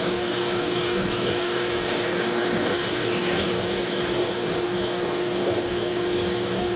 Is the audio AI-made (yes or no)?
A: yes